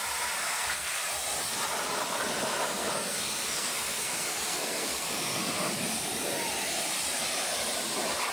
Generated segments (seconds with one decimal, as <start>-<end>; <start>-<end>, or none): 0.4-1.0; 2.4-5.7